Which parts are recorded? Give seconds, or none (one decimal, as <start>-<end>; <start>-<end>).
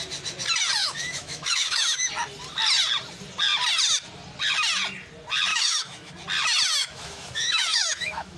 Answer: 0.0-0.8; 2.1-5.5; 6.1-6.8